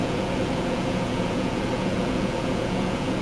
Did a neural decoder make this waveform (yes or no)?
yes